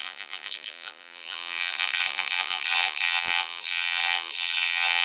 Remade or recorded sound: remade